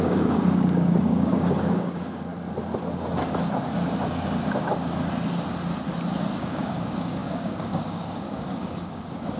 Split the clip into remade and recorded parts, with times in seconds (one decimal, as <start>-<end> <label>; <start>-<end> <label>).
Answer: 0.0-2.3 remade; 2.3-6.4 recorded; 6.4-9.4 remade